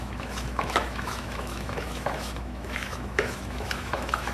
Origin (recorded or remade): remade